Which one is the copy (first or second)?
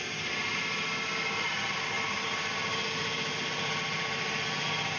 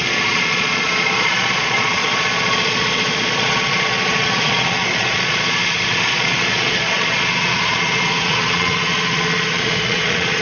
second